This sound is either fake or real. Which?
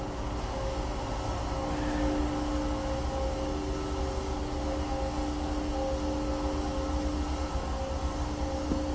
real